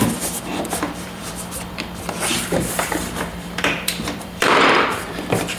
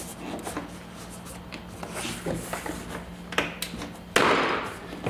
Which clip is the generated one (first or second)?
first